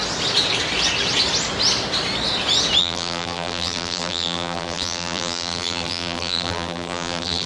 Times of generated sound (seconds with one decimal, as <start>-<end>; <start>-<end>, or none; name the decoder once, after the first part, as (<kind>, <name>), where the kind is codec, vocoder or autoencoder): 2.8-7.5 (vocoder, BigVGAN v2)